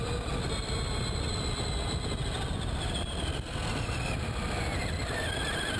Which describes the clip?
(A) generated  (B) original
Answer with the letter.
B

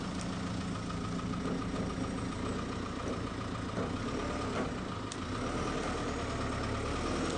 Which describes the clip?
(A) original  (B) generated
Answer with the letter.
A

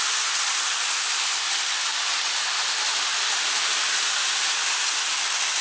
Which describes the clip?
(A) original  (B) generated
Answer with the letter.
A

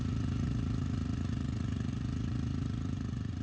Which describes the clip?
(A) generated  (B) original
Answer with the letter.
A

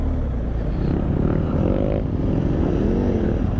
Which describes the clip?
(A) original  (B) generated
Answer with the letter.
A